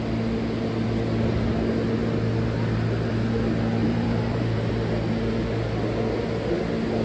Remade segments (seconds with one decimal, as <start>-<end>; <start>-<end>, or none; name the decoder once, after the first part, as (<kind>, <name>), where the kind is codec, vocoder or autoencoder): 3.8-4.7 (vocoder, BigVGAN v2)